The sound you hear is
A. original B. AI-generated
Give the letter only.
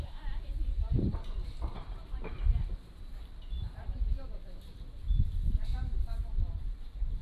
B